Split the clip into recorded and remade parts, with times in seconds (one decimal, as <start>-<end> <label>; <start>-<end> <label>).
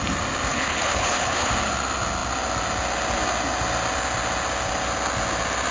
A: 0.0-0.5 recorded; 0.5-1.5 remade; 1.5-5.7 recorded